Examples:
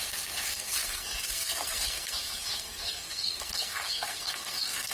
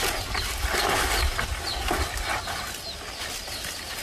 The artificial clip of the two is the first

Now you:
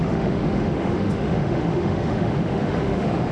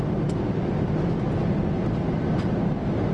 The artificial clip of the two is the first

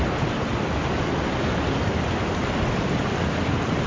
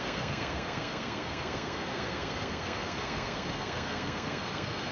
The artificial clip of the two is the second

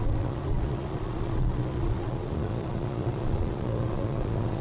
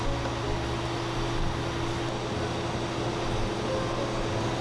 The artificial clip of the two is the first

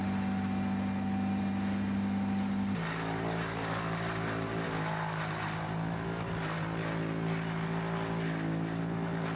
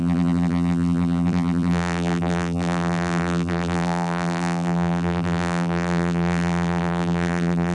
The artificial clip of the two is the second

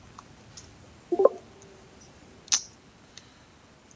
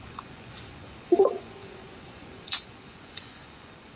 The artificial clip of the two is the second